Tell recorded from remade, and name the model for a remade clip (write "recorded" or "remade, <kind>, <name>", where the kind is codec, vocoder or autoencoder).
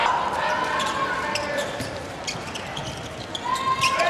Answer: recorded